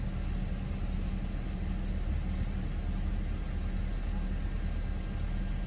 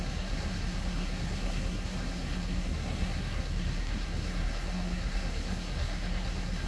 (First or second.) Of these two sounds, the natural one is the first